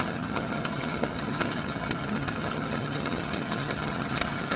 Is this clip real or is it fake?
fake